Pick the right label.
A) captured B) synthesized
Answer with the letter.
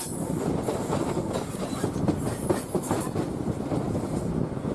A